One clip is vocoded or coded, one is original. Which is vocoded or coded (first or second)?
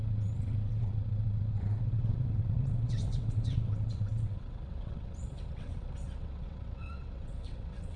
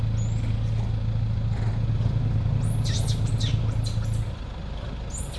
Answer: first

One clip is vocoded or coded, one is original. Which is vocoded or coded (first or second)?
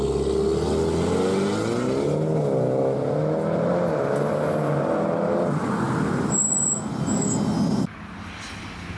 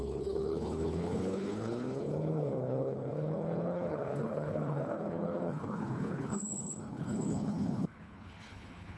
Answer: second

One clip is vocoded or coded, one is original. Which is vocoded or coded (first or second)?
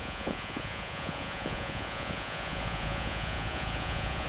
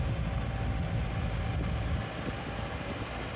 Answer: first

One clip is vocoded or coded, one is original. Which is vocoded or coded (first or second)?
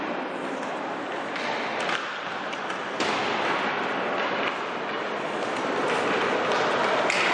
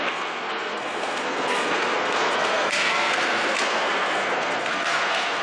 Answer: second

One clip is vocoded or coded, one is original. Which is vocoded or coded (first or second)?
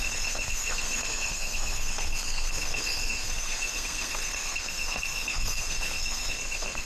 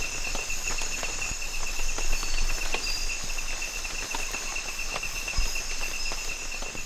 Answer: first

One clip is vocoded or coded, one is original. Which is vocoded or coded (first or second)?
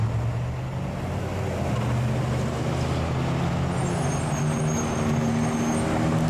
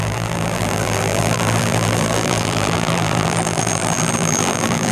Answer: second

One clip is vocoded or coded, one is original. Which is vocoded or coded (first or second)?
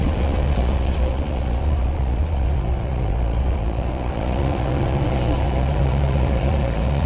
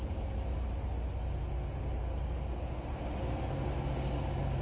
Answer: first